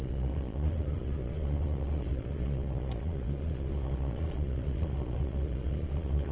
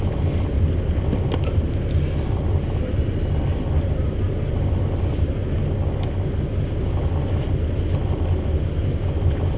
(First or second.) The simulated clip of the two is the first